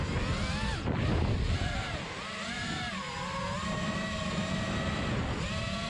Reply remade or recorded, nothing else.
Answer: recorded